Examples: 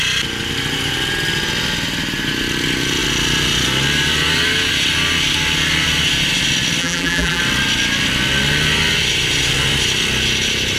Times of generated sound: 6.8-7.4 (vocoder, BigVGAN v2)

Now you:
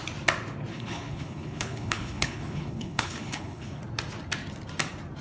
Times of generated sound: 0.7-3.8 (codec, HILCodec)

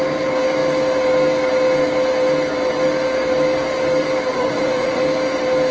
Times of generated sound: 4.3-5.0 (vocoder, Vocos)